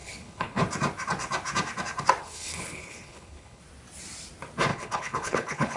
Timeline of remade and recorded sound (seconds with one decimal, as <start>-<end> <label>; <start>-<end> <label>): 0.0-0.6 remade; 0.6-2.2 recorded; 2.2-3.6 remade; 3.6-4.7 recorded; 4.7-5.8 remade